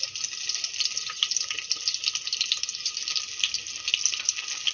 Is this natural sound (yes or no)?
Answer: yes